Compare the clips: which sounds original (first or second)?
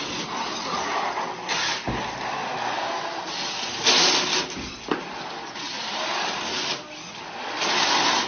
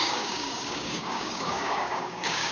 first